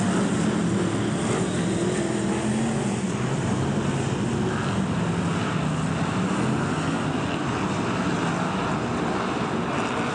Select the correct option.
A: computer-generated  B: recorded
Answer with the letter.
B